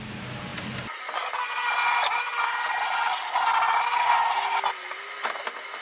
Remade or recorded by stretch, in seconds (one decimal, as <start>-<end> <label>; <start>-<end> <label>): 0.0-5.8 recorded